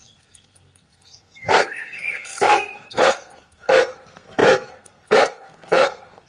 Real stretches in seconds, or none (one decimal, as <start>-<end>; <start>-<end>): none